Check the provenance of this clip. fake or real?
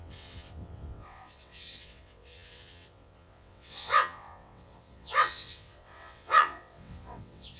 fake